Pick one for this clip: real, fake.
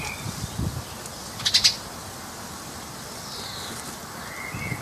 real